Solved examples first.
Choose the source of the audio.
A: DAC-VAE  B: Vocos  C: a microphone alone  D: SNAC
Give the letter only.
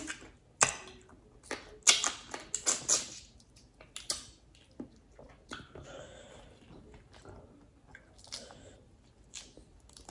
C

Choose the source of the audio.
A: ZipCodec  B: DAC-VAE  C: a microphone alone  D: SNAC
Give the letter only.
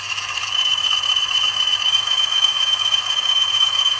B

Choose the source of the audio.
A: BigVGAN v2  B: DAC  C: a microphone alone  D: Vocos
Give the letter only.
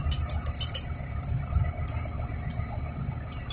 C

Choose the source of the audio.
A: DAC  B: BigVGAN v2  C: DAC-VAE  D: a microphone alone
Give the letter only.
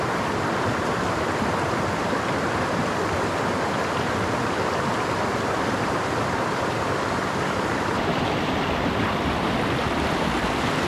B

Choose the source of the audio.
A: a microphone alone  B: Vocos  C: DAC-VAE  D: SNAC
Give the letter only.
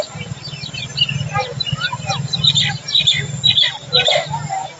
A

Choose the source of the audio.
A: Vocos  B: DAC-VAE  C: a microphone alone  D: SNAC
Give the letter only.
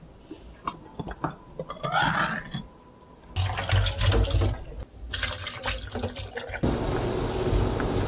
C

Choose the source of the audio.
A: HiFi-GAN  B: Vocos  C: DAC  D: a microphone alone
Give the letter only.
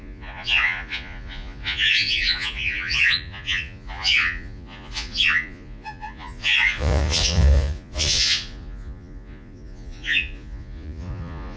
B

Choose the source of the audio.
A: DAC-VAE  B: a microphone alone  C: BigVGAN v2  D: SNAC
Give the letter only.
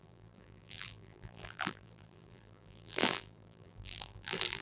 C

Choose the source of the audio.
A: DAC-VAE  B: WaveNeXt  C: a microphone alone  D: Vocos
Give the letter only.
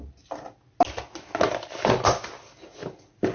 C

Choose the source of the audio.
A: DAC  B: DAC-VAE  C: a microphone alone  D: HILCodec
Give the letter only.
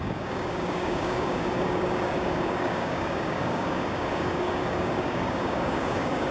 A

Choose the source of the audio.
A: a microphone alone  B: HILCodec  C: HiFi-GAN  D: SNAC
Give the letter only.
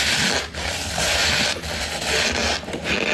A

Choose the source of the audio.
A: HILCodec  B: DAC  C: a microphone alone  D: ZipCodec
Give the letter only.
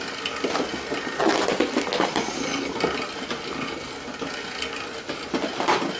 C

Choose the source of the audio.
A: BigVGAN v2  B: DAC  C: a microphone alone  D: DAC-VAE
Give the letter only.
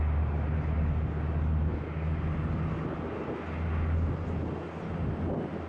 C